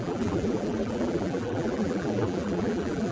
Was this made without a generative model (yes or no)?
no